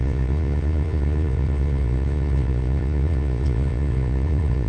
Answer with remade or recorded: remade